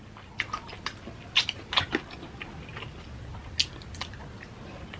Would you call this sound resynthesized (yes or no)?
no